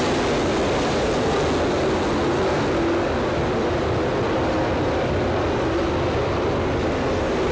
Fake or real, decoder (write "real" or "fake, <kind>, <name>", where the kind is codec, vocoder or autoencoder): real